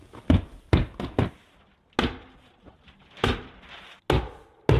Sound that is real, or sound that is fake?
real